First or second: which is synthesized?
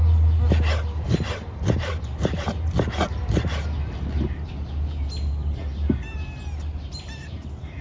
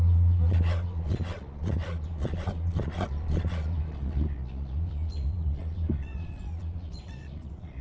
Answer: second